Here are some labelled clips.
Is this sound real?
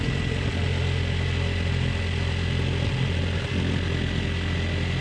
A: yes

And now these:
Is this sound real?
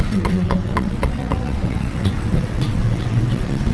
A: no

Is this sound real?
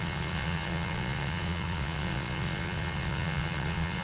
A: no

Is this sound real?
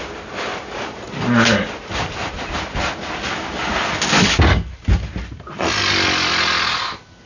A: yes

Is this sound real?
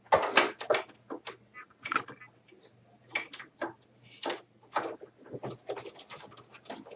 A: yes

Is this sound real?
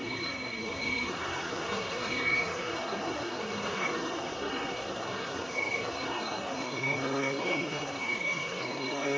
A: no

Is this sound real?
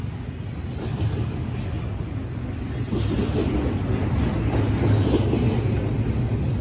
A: yes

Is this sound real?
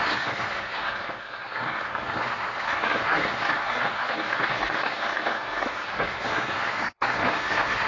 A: no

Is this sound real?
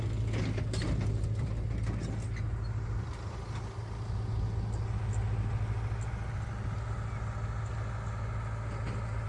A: yes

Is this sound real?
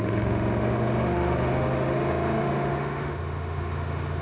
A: no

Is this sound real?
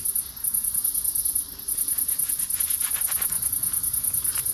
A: yes